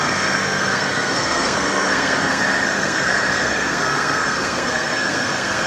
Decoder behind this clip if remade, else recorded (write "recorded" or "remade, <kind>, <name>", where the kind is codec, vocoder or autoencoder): remade, codec, SNAC